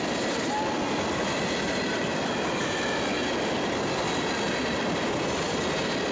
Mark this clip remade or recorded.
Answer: recorded